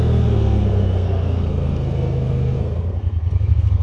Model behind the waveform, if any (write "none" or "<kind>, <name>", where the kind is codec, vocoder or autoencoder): codec, SNAC